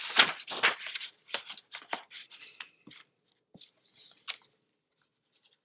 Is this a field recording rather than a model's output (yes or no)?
yes